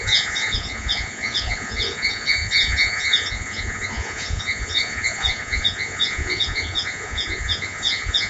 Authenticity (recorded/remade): remade